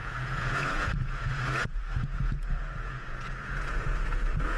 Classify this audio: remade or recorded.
remade